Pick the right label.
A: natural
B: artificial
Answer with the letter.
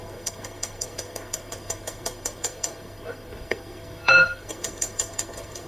B